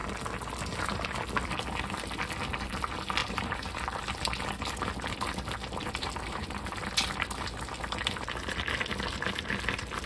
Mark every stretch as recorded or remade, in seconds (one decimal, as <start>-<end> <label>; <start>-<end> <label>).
0.0-3.2 recorded; 3.2-4.0 remade; 4.0-5.8 recorded; 5.8-6.8 remade; 6.8-10.1 recorded